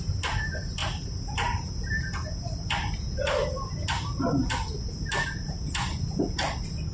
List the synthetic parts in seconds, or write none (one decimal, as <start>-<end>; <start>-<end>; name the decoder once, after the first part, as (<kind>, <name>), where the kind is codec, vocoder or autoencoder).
none